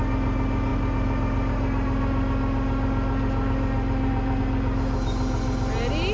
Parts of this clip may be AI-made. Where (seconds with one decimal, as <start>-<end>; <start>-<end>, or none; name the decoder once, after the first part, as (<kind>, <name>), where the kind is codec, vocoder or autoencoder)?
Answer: 0.7-4.4 (vocoder, BigVGAN v2)